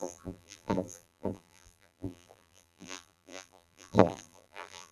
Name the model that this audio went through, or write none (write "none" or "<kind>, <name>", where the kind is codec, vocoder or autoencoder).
vocoder, BigVGAN v2